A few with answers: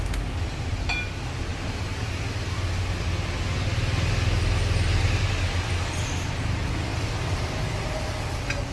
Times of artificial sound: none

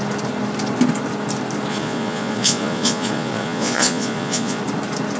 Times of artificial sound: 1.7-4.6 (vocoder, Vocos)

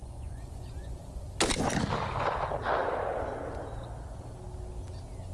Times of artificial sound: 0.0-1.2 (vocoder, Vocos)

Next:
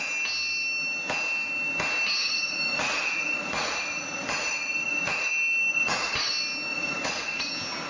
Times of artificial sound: 2.2-5.3 (vocoder, Vocos); 5.7-6.3; 6.7-7.5

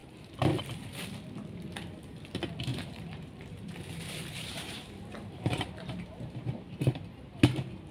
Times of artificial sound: 0.0-1.0 (vocoder, BigVGAN v2); 2.7-6.7

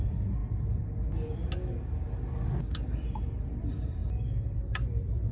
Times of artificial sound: 0.0-0.4 (vocoder, BigVGAN v2); 3.6-5.3

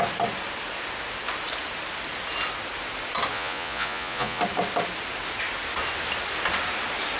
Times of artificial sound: 3.3-4.4 (vocoder, Vocos)

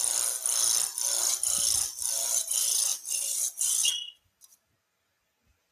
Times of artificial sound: none